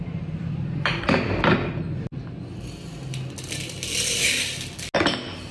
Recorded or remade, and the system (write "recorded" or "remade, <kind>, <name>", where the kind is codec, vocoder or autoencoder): recorded